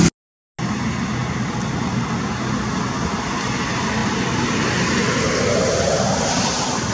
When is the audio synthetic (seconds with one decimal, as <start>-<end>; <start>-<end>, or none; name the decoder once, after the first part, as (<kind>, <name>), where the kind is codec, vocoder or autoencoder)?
none